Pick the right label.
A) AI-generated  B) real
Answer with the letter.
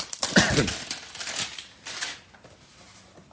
B